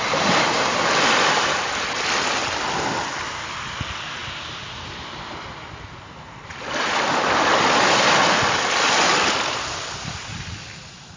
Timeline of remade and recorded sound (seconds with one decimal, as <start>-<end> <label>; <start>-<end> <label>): 0.0-11.2 recorded